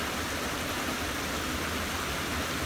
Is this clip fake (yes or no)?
no